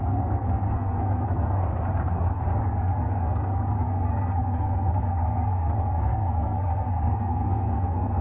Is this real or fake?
fake